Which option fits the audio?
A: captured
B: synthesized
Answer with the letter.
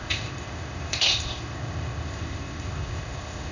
B